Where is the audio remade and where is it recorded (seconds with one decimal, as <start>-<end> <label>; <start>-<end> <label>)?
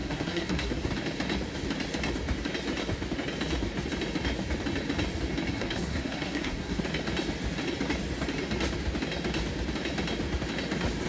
0.0-0.9 remade; 0.9-5.5 recorded; 5.5-6.8 remade; 6.8-11.1 recorded